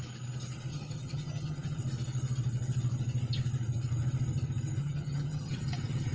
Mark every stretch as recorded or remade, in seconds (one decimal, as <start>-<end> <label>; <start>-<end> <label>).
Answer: 0.0-0.7 recorded; 0.7-1.8 remade; 1.8-4.8 recorded; 4.8-5.6 remade; 5.6-6.1 recorded